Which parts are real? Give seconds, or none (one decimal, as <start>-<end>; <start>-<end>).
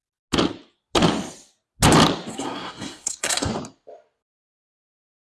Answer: 0.0-2.3; 3.5-4.2